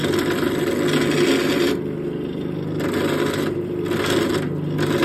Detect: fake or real real